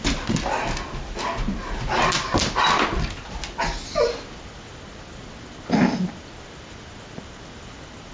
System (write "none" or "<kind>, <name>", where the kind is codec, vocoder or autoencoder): none